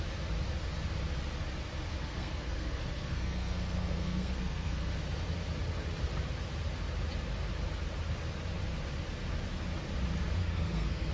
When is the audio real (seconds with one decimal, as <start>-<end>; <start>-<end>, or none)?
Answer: 0.0-2.0; 4.9-10.4